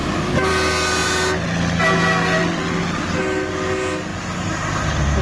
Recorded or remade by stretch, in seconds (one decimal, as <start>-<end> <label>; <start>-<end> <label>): 0.0-0.5 remade; 0.5-5.2 recorded